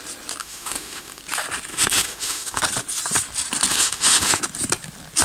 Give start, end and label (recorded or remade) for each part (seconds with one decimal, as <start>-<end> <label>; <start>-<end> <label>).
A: 0.0-0.4 recorded; 0.4-1.2 remade; 1.2-1.7 recorded; 1.7-2.6 remade; 2.6-3.7 recorded; 3.7-4.4 remade; 4.4-5.2 recorded